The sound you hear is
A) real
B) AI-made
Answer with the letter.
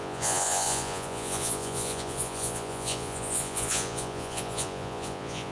B